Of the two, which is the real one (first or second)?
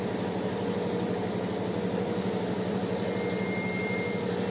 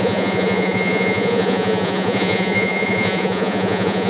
first